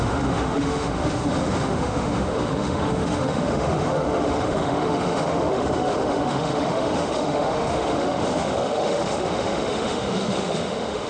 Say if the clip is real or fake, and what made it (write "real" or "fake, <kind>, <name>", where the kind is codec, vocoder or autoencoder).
fake, autoencoder, DAC-VAE